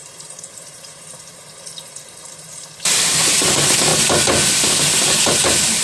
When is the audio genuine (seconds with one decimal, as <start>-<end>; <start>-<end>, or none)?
3.5-5.8